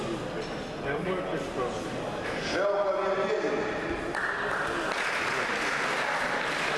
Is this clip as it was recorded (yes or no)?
yes